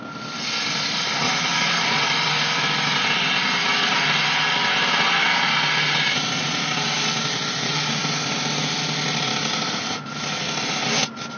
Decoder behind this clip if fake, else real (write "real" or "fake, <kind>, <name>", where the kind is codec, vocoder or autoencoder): real